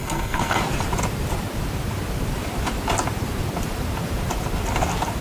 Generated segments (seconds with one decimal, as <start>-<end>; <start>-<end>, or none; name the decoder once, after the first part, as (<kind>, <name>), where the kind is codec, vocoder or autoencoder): 0.0-0.6 (codec, SNAC)